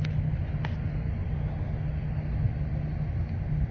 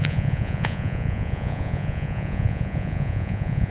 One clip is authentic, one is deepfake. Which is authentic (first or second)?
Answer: first